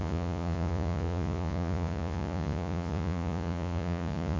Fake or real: fake